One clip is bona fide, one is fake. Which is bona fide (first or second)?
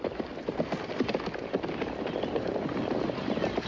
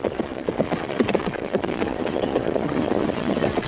first